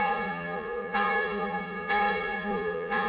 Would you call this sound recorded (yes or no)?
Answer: no